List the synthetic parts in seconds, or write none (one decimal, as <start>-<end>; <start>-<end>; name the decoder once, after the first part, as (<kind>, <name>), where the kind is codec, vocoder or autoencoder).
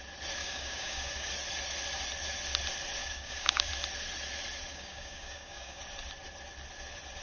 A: 0.4-1.3 (codec, DAC); 3.0-3.7; 4.7-5.8